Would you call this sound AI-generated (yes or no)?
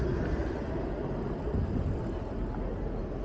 no